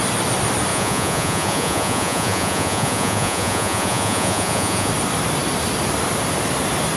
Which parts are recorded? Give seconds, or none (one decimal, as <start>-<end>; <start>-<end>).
0.0-0.7; 4.9-7.0